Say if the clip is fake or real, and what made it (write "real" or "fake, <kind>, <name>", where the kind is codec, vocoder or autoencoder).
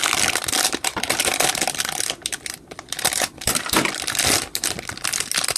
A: real